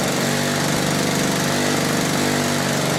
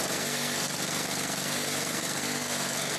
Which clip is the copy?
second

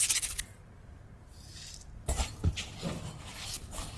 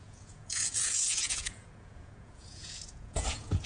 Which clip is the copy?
second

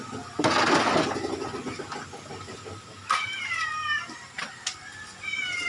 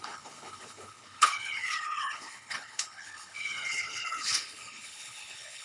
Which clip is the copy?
second